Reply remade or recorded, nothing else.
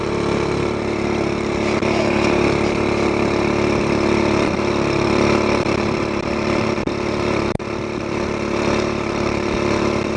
remade